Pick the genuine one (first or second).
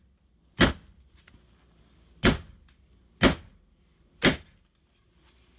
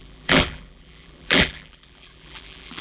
first